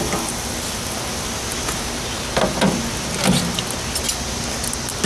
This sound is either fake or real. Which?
real